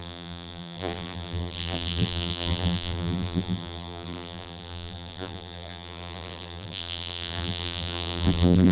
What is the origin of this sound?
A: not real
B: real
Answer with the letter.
A